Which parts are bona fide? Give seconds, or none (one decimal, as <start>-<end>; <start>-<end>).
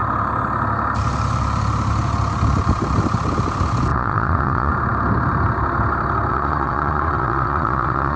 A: 0.0-3.9; 4.7-6.3